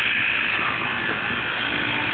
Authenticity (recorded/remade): recorded